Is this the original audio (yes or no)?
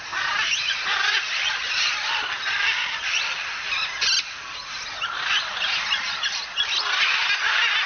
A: yes